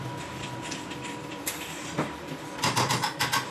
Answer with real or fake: fake